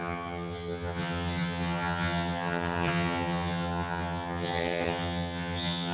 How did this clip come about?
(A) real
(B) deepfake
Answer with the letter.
B